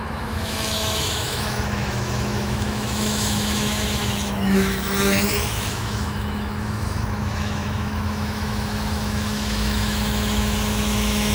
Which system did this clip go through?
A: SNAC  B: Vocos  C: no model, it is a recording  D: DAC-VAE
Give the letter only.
D